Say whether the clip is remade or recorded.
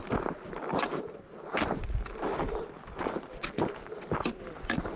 recorded